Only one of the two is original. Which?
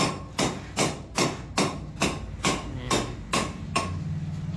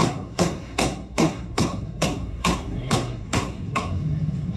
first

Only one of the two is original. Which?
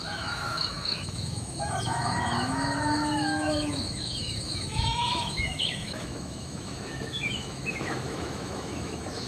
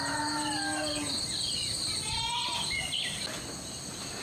second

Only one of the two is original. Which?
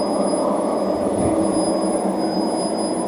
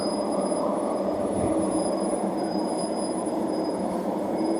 first